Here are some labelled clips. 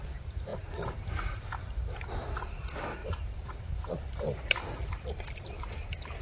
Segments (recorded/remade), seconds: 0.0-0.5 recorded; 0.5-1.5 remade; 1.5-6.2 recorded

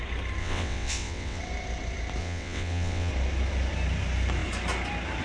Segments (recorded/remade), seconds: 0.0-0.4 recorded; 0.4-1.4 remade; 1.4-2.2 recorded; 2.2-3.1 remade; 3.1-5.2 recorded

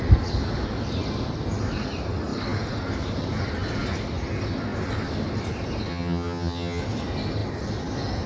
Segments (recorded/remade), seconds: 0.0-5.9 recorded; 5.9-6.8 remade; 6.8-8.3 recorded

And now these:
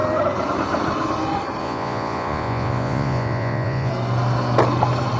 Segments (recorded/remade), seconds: 0.0-1.6 recorded; 1.6-3.9 remade; 3.9-5.2 recorded

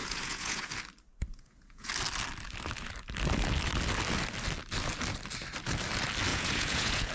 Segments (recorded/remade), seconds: 0.0-0.7 remade; 0.7-1.3 recorded; 1.3-1.9 remade; 1.9-6.3 recorded; 6.3-7.1 remade

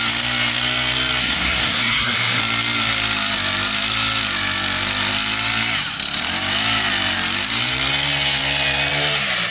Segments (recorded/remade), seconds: 0.0-1.2 recorded; 1.2-2.4 remade; 2.4-9.5 recorded